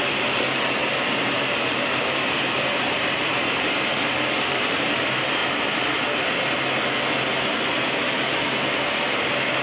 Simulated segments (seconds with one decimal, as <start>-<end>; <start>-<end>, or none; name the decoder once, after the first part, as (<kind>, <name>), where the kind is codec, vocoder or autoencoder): 0.0-5.4 (vocoder, BigVGAN v2)